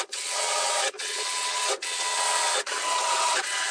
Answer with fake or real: fake